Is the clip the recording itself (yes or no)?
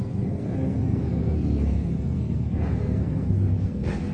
no